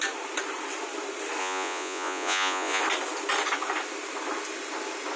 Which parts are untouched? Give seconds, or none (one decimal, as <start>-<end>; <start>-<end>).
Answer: 0.0-1.4; 2.8-5.2